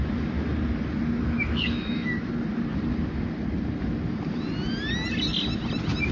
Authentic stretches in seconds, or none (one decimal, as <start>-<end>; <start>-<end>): 0.0-1.4; 2.3-6.1